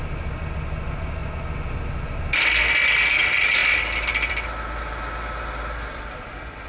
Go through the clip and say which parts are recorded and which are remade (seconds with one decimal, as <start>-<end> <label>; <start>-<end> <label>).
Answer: 0.0-6.7 recorded